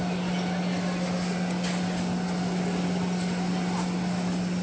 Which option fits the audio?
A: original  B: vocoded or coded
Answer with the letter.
A